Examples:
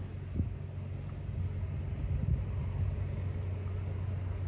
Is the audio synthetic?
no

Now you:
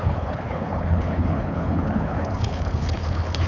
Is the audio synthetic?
yes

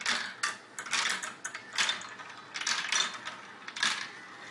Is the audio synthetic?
no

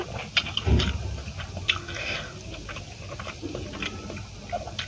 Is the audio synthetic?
no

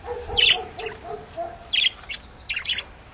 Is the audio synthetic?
no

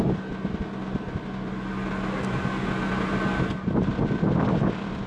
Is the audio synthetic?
no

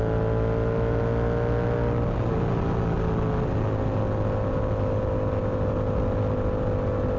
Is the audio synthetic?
no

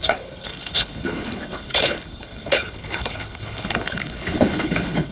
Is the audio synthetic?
yes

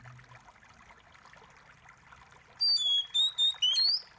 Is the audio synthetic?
no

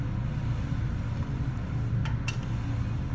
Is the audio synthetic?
no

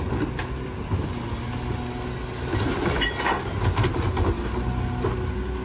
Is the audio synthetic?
no